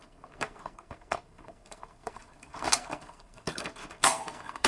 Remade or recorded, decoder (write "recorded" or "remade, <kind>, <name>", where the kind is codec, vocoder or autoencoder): remade, codec, SNAC